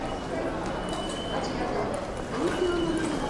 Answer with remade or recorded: recorded